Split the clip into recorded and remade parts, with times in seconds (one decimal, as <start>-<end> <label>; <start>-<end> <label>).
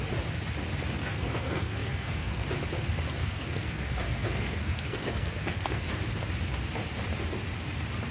0.0-1.0 recorded; 1.0-2.5 remade; 2.5-3.2 recorded; 3.2-5.9 remade; 5.9-8.1 recorded